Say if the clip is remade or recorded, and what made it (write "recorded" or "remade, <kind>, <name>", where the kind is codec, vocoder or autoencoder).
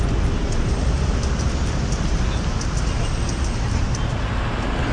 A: recorded